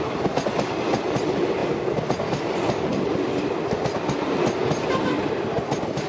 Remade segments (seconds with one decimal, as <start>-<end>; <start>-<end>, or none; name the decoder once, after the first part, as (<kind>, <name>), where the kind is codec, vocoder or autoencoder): none